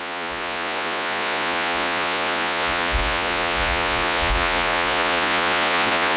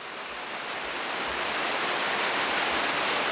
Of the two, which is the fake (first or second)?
first